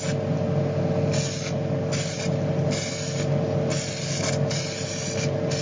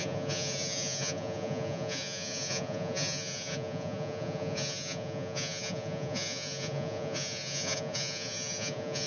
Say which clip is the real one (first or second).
first